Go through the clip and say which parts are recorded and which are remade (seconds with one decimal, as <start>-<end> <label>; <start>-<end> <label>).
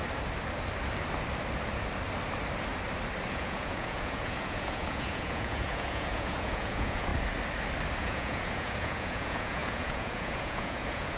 0.0-3.3 recorded; 3.3-7.1 remade; 7.1-8.0 recorded; 8.0-11.2 remade